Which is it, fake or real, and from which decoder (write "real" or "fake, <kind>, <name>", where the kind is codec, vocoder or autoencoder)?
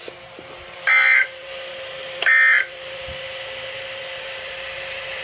real